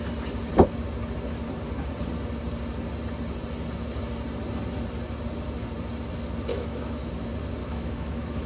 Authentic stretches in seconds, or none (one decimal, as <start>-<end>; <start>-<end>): 0.0-6.5; 7.1-7.6